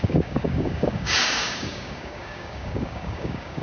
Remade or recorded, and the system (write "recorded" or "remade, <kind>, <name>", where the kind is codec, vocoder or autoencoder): remade, codec, DAC